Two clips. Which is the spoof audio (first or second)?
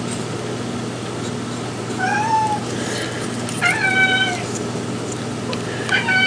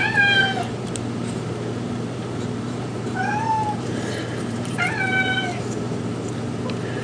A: second